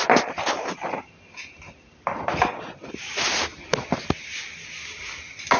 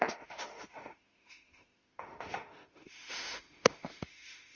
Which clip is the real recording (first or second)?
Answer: first